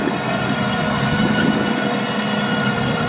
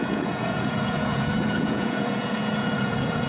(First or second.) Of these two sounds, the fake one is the second